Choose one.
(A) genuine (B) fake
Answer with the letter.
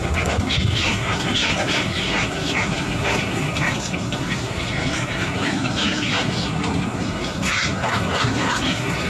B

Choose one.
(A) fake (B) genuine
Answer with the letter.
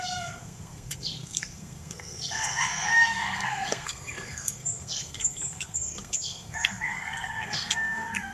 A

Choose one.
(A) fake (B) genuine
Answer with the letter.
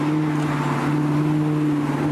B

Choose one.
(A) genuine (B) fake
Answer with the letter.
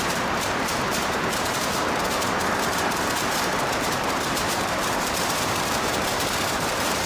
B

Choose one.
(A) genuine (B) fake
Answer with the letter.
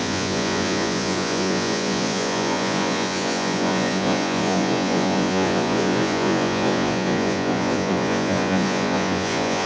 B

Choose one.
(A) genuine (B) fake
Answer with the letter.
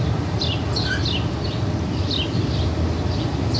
A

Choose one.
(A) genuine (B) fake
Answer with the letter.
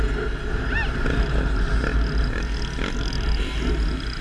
A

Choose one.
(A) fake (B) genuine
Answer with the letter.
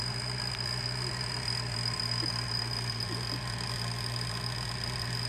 B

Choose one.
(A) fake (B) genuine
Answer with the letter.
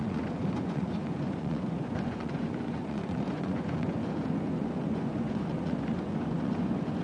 A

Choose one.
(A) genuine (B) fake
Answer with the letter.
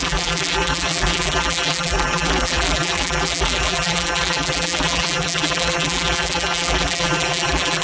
B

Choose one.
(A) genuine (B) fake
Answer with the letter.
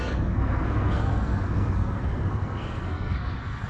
B